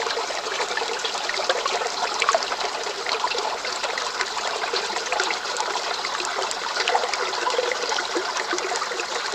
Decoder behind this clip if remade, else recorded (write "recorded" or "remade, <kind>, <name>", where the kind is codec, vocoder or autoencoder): recorded